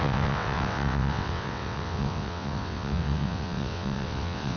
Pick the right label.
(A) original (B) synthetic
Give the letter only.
B